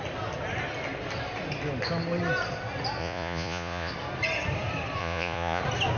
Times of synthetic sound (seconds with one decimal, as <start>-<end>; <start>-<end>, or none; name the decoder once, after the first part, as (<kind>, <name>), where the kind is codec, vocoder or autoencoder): 3.0-3.9 (vocoder, Vocos); 5.0-5.6

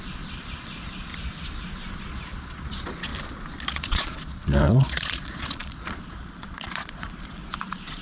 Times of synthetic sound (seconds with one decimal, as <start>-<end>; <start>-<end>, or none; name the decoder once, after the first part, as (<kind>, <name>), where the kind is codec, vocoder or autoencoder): 0.0-1.1 (vocoder, Vocos); 1.9-3.1; 3.7-8.0